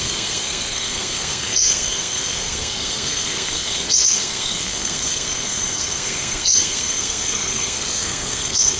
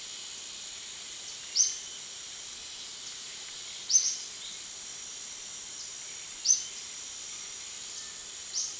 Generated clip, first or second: first